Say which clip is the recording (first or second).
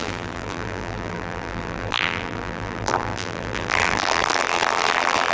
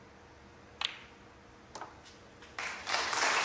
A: second